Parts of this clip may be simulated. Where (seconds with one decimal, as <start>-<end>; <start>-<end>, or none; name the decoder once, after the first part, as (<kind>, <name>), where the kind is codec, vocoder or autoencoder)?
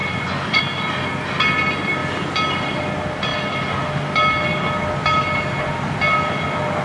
0.0-0.6 (vocoder, Vocos)